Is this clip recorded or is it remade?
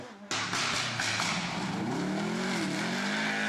recorded